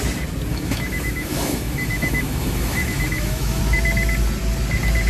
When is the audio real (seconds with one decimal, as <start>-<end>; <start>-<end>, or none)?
0.0-0.5; 3.6-5.1